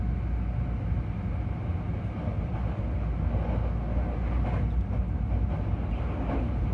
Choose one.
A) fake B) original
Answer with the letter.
B